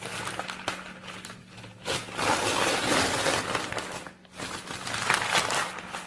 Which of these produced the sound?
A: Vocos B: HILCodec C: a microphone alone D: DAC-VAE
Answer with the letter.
C